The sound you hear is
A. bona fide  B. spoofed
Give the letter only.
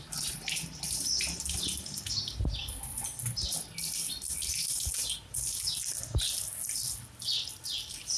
A